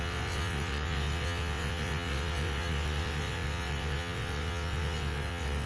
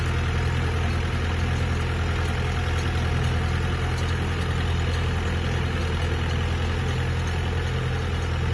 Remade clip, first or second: first